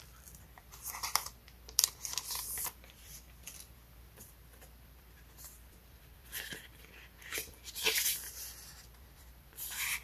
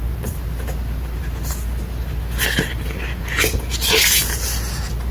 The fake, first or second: first